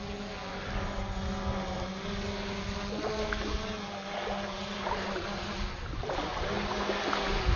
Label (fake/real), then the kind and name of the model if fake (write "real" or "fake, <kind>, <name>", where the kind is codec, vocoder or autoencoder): real